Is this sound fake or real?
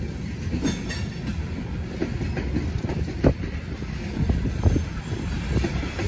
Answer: real